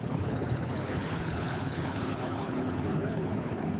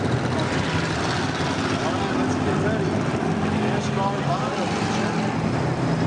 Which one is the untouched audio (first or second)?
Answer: second